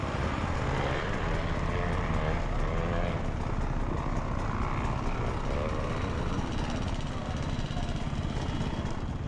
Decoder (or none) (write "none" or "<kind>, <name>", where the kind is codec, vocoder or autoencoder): none